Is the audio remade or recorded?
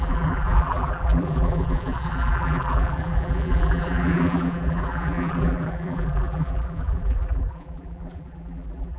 remade